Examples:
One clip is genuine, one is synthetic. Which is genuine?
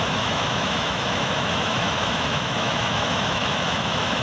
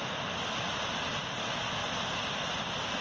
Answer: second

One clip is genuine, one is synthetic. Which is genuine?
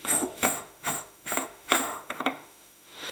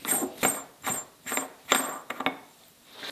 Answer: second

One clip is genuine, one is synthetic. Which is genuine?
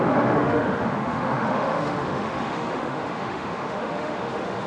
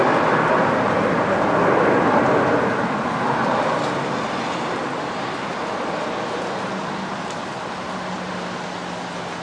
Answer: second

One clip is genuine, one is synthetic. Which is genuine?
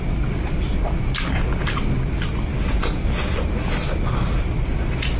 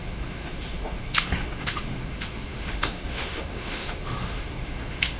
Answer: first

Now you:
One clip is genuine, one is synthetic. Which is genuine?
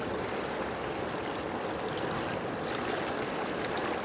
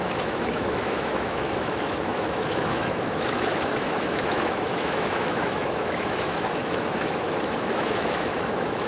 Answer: first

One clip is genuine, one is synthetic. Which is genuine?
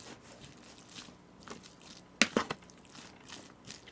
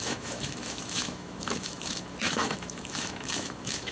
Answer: first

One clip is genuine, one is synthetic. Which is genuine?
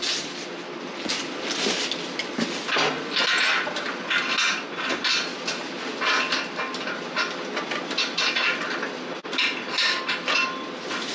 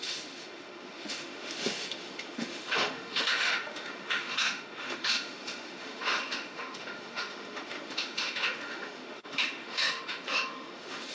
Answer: first